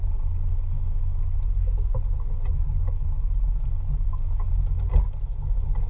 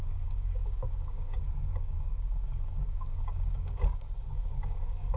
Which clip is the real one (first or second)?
first